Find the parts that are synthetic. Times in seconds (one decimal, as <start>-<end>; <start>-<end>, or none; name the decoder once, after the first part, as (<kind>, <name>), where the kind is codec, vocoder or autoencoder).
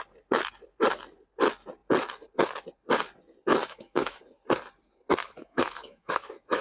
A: 3.6-4.2 (autoencoder, DAC-VAE); 5.2-6.6